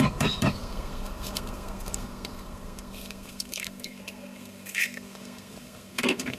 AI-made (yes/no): yes